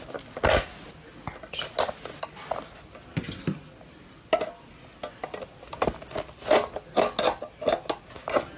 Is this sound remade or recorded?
recorded